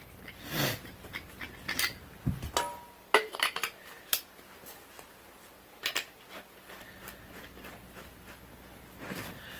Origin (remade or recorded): recorded